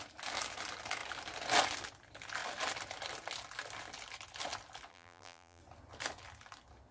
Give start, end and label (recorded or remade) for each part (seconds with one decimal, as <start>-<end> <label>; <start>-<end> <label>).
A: 0.0-4.9 recorded; 4.9-5.6 remade; 5.6-6.9 recorded